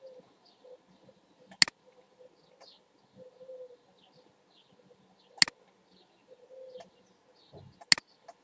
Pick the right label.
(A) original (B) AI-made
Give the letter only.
A